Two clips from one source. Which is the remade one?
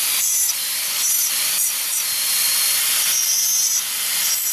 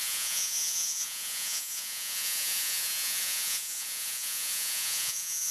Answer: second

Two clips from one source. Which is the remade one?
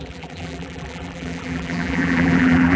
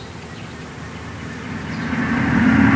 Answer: first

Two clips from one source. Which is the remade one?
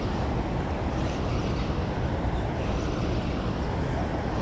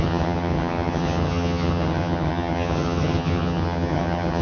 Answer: second